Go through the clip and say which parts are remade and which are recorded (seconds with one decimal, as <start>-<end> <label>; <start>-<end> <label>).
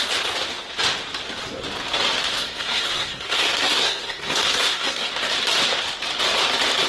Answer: 0.0-2.4 recorded; 2.4-5.1 remade; 5.1-6.9 recorded